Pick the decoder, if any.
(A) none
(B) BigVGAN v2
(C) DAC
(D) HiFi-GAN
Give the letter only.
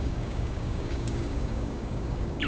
C